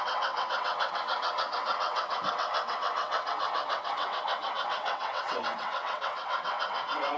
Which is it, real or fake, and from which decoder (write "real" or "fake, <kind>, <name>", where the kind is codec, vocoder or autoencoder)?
fake, vocoder, WaveNeXt